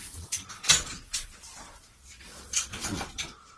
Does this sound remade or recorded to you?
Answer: remade